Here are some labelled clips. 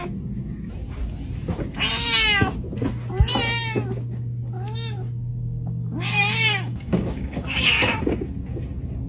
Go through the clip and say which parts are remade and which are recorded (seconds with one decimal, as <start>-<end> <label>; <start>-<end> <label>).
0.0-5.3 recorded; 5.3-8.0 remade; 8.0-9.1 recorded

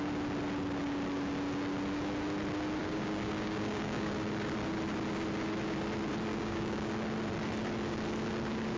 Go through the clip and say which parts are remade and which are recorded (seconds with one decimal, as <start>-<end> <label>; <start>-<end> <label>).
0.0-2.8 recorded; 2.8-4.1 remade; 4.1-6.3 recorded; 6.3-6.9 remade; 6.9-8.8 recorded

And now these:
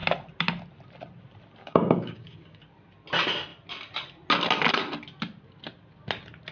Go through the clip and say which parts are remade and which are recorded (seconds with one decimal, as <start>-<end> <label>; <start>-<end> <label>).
0.0-1.6 recorded; 1.6-2.6 remade; 2.6-6.5 recorded

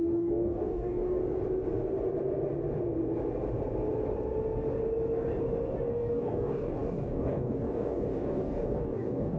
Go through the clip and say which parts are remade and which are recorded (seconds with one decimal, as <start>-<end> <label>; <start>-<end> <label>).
0.0-1.2 remade; 1.2-5.9 recorded; 5.9-9.4 remade

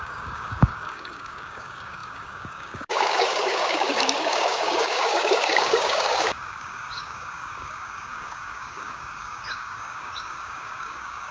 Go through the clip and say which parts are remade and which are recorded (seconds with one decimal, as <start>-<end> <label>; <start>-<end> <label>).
0.0-11.3 remade

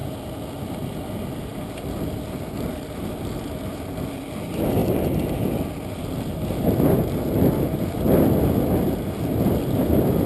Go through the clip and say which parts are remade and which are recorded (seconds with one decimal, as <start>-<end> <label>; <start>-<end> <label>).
0.0-10.3 recorded